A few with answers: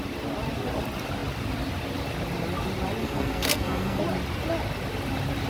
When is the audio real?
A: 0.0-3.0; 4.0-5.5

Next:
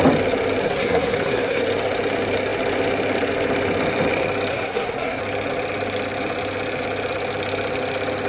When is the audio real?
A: 0.0-0.6; 1.6-4.5; 5.2-8.3

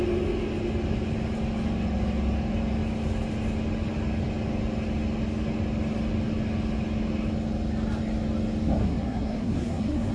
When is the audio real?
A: 0.0-8.8

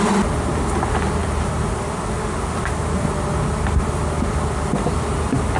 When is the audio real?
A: 0.0-5.6